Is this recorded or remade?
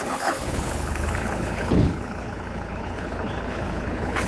remade